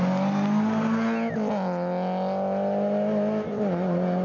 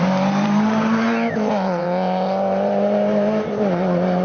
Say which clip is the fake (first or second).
second